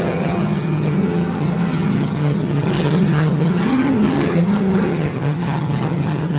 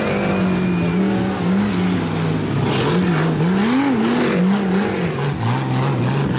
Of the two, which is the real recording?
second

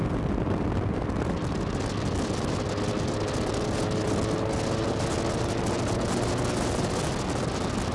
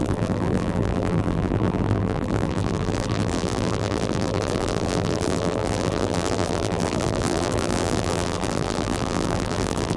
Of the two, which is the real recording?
first